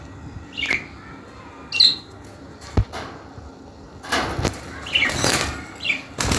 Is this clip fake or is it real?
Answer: real